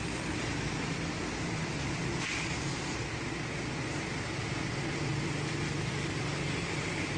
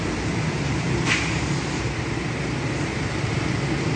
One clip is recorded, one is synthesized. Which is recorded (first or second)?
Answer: first